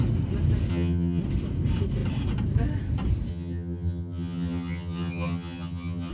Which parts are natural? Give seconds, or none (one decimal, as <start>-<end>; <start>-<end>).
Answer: 0.0-0.7; 1.2-3.3

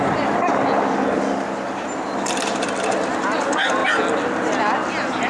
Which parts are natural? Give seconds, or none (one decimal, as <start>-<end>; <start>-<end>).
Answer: 0.0-5.3